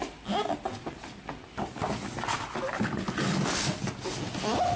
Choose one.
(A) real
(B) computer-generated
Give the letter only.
A